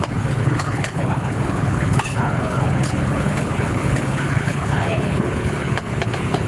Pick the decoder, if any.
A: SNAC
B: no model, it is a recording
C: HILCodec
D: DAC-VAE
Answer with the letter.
C